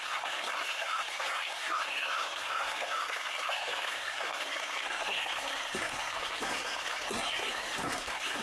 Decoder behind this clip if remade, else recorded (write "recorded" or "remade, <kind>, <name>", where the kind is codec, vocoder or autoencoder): remade, codec, SNAC